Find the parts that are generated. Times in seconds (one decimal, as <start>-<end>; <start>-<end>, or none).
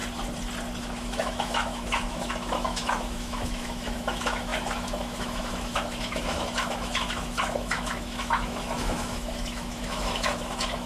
0.8-10.9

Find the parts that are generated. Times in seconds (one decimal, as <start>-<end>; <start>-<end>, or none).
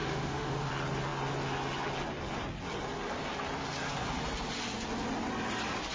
0.0-0.7